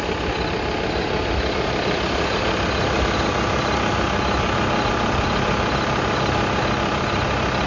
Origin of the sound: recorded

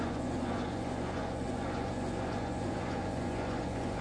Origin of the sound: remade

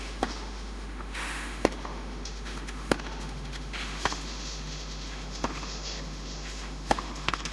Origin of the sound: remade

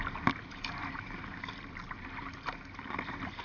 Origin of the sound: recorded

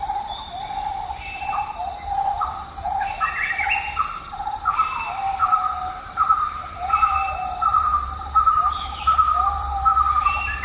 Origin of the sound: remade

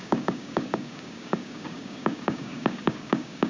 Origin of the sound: remade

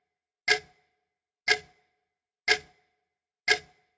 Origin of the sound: recorded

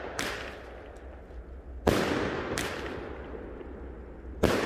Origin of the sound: recorded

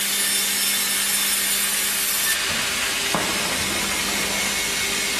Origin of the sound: recorded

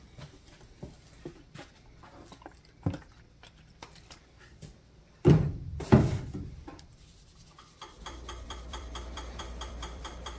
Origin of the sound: remade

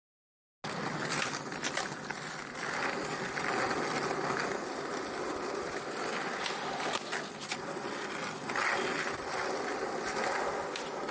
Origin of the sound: recorded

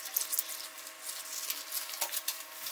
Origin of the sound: recorded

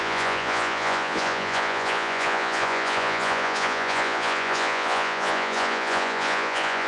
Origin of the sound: remade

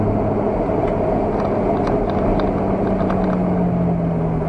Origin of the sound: recorded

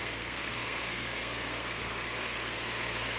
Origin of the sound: remade